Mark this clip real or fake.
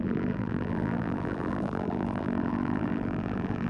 fake